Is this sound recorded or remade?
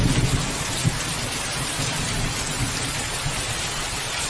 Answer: recorded